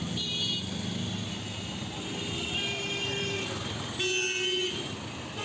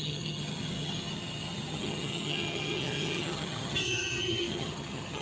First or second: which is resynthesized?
second